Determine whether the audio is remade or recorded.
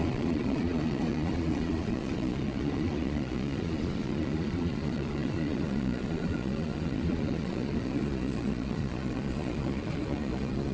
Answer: remade